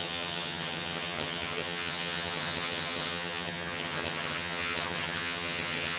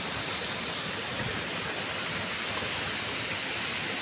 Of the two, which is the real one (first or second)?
second